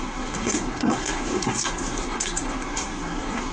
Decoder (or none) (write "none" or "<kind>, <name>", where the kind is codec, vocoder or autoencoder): codec, SNAC